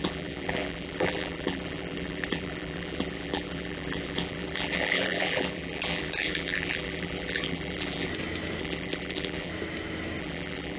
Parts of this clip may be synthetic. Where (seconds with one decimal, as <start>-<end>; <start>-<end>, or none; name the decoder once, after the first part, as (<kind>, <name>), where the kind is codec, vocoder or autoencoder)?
0.0-8.1 (vocoder, BigVGAN v2); 8.6-9.5; 10.2-10.8